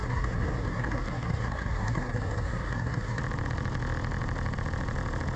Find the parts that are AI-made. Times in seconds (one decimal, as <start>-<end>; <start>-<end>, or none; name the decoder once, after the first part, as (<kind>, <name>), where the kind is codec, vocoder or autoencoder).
0.0-3.2 (codec, SNAC)